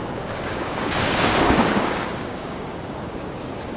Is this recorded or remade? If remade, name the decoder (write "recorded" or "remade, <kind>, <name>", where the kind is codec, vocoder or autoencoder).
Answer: remade, codec, DAC